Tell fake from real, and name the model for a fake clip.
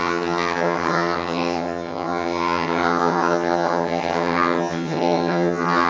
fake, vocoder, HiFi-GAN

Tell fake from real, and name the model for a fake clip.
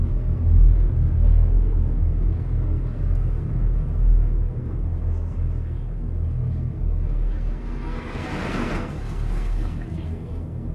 fake, codec, SNAC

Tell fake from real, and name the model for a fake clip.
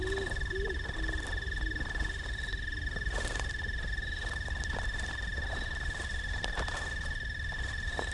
real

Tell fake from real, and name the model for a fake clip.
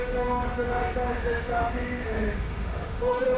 fake, autoencoder, DAC-VAE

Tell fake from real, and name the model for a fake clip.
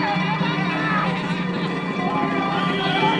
real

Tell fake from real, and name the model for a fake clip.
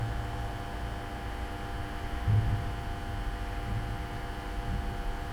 real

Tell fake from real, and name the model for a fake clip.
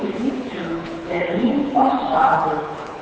fake, codec, HILCodec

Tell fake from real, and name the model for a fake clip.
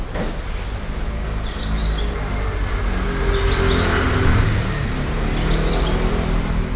real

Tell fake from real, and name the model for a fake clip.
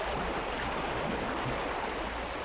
real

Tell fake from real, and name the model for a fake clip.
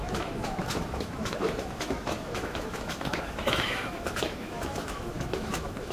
fake, autoencoder, DAC-VAE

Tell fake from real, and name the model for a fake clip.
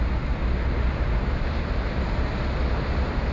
real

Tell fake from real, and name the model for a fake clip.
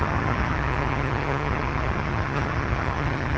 fake, vocoder, HiFi-GAN